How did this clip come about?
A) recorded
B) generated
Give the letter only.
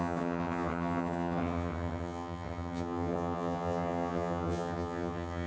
B